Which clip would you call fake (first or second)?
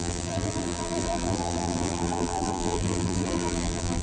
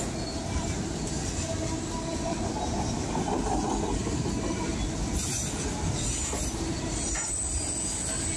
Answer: first